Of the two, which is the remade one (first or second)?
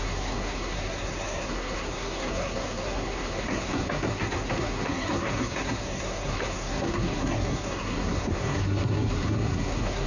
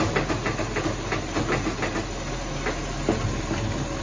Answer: first